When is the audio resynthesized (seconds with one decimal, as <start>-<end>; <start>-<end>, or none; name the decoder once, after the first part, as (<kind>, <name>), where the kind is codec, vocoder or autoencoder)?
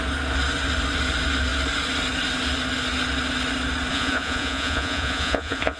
3.9-5.8 (vocoder, Vocos)